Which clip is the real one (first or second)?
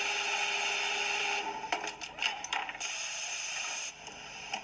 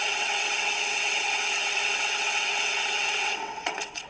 first